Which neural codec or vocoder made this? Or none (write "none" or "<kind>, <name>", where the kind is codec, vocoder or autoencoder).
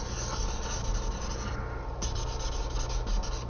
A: none